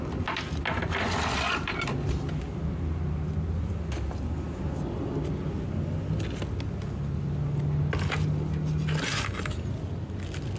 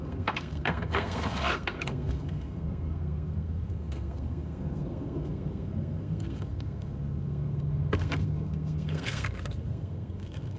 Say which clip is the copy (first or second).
second